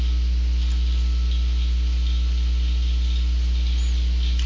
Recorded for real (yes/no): yes